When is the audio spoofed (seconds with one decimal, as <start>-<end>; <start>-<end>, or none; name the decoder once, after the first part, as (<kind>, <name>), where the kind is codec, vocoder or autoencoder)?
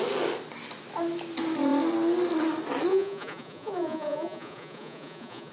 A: 2.9-5.5 (vocoder, Vocos)